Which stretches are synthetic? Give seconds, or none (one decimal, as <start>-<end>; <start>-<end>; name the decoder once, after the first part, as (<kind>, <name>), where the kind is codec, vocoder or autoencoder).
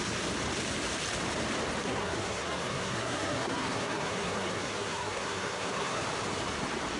1.8-6.0 (codec, SNAC)